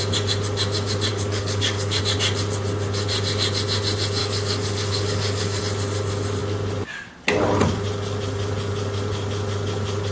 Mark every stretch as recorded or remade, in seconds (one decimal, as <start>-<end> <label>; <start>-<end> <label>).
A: 0.0-1.1 recorded; 1.1-2.0 remade; 2.0-4.2 recorded; 4.2-5.6 remade; 5.6-10.1 recorded